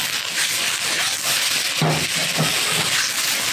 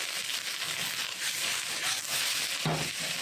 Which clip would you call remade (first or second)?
second